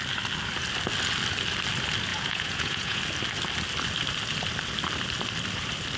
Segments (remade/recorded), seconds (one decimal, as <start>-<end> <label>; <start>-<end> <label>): 0.0-2.1 recorded; 2.1-3.0 remade; 3.0-6.0 recorded

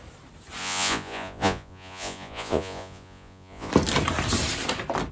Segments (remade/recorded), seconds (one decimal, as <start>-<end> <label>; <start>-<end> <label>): 0.0-0.6 recorded; 0.6-3.7 remade; 3.7-5.1 recorded

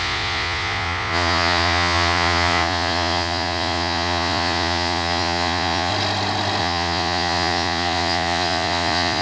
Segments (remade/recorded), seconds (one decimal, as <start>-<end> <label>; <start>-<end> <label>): 0.0-5.9 remade; 5.9-6.6 recorded; 6.6-9.2 remade